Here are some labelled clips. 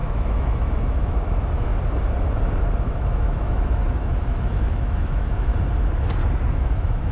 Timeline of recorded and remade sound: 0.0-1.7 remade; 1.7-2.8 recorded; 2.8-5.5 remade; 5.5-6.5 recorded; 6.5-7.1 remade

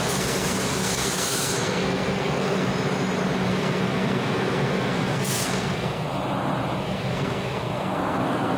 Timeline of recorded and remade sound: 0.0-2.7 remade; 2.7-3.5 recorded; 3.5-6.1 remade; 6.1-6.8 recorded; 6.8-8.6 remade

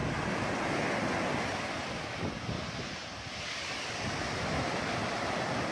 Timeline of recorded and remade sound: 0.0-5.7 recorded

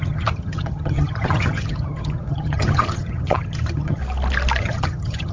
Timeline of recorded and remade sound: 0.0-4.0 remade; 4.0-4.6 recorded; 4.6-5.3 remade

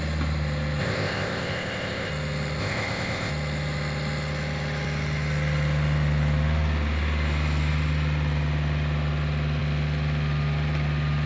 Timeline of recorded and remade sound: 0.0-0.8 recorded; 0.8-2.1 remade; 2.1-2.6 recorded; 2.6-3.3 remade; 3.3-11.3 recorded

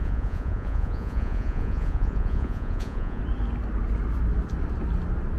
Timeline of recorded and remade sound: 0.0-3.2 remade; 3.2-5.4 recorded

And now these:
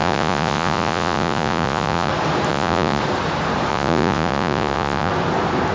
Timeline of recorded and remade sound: 0.0-2.1 remade; 2.1-2.5 recorded; 2.5-3.0 remade; 3.0-3.7 recorded; 3.7-5.1 remade; 5.1-5.7 recorded